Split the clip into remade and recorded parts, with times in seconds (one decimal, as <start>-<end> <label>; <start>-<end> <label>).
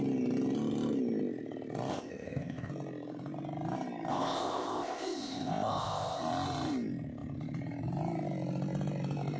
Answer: 0.0-1.9 recorded; 1.9-2.7 remade; 2.7-4.1 recorded; 4.1-6.2 remade; 6.2-9.4 recorded